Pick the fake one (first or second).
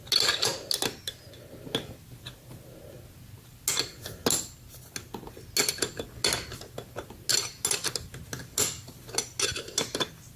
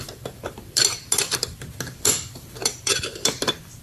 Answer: second